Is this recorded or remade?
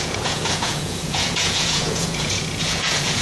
remade